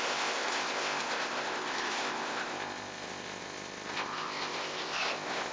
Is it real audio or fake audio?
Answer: fake